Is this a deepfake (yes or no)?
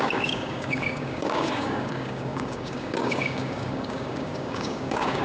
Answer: yes